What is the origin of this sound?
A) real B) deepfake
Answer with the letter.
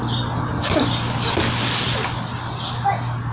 A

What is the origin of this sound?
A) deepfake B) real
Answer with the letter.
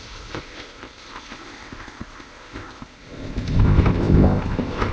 A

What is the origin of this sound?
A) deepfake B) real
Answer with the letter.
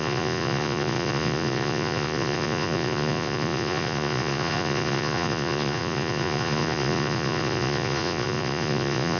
A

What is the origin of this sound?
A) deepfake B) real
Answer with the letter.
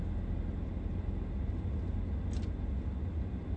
B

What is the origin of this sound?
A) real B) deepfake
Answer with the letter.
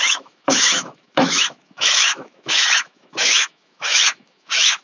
B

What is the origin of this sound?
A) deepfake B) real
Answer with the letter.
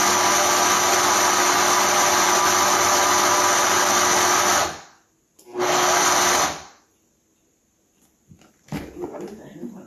B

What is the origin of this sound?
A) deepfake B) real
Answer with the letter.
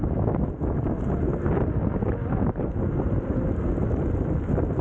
B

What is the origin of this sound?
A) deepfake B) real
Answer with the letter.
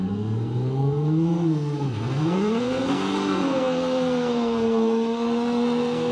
A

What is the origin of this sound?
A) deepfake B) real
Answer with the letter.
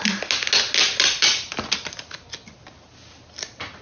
B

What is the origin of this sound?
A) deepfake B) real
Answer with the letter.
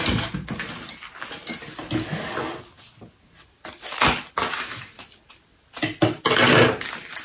B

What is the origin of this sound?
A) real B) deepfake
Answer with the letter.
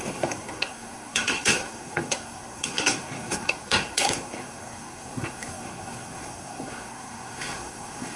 B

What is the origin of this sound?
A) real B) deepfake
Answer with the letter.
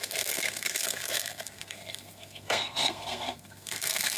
B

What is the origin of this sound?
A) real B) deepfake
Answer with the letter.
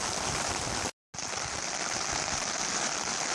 A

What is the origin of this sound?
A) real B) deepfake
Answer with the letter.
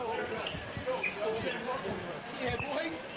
A